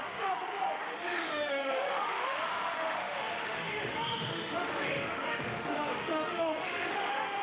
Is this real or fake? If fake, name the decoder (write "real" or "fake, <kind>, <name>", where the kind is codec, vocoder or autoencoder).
fake, autoencoder, DAC-VAE